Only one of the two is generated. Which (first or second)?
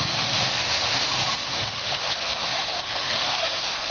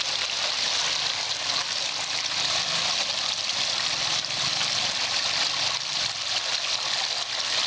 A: first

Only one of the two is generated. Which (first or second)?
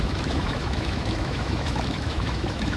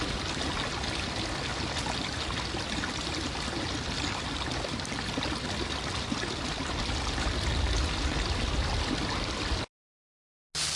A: first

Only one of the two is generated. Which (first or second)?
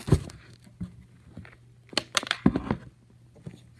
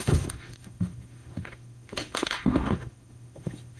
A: second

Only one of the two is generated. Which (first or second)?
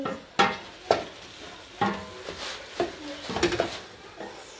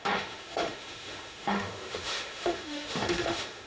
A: second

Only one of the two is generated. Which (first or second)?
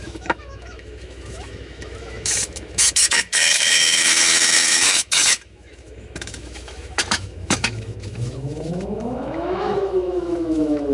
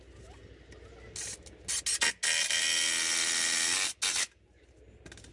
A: first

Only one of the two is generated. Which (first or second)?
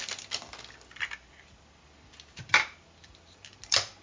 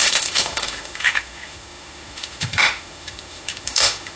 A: second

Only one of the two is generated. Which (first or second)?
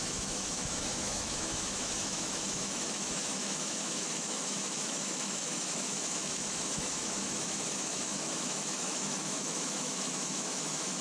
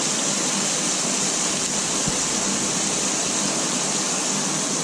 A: first